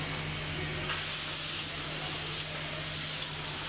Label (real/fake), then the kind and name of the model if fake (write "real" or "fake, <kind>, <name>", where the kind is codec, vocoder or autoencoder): real